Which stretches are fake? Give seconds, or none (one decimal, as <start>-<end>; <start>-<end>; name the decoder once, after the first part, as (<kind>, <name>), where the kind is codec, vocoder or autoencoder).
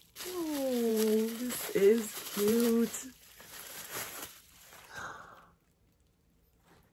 0.9-5.0 (vocoder, BigVGAN v2)